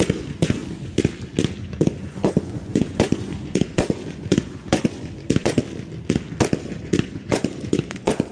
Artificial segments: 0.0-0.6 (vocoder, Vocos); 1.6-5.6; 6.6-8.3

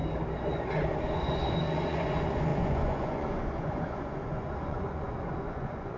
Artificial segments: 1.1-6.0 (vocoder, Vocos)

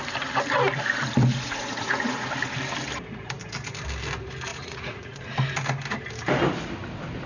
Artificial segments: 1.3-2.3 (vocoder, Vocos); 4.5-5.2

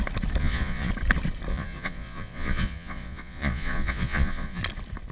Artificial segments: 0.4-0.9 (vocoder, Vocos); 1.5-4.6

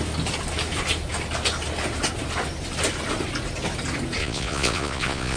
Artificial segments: 4.2-5.4 (vocoder, Vocos)